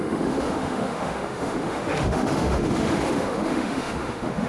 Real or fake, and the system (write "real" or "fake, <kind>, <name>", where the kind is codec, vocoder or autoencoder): fake, autoencoder, DAC-VAE